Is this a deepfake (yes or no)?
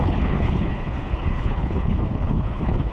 yes